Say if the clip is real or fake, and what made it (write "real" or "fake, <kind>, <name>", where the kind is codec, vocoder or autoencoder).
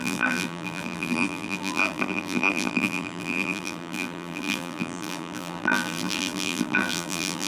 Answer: fake, vocoder, BigVGAN v2